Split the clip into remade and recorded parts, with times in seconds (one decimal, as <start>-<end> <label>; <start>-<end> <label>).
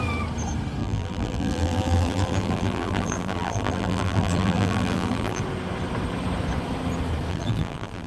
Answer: 0.0-0.8 recorded; 0.8-5.4 remade; 5.4-7.3 recorded; 7.3-8.1 remade